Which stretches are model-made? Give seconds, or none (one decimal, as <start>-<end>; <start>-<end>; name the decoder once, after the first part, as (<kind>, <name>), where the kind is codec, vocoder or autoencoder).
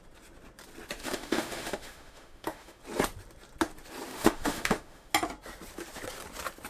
1.0-2.8 (autoencoder, DAC-VAE); 4.1-5.1